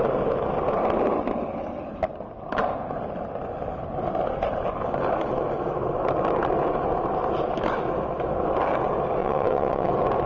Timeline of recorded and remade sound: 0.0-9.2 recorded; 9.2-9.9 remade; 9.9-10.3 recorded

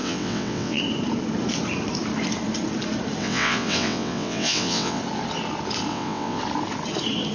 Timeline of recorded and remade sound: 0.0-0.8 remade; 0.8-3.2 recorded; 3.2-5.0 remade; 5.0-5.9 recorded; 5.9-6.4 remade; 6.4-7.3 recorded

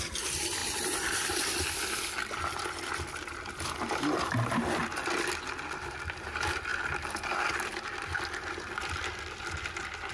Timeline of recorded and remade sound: 0.0-10.1 recorded

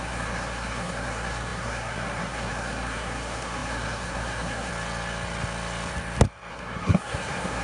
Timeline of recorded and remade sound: 0.0-4.7 remade; 4.7-6.5 recorded; 6.5-7.6 remade

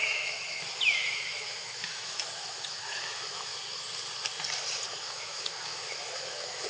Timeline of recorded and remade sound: 0.0-3.5 remade; 3.5-4.9 recorded; 4.9-6.7 remade

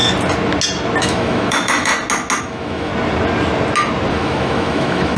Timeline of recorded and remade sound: 0.0-1.0 recorded; 1.0-1.9 remade; 1.9-2.4 recorded; 2.4-2.9 remade; 2.9-4.1 recorded; 4.1-5.2 remade

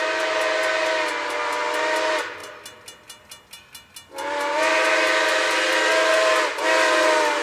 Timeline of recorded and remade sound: 0.0-7.4 recorded